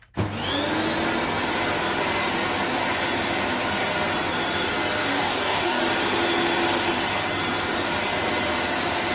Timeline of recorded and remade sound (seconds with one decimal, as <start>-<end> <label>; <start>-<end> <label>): 0.0-5.1 recorded; 5.1-5.8 remade; 5.8-9.1 recorded